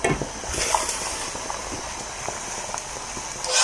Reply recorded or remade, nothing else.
recorded